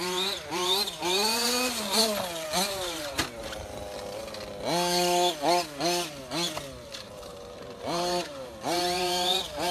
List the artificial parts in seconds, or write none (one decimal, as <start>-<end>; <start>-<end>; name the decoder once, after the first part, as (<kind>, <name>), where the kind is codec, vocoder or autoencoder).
0.0-2.0 (vocoder, BigVGAN v2); 2.7-3.2; 6.8-9.7